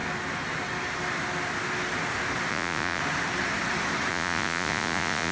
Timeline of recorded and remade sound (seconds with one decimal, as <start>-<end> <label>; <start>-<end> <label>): 0.0-2.5 recorded; 2.5-3.0 remade; 3.0-4.1 recorded; 4.1-5.3 remade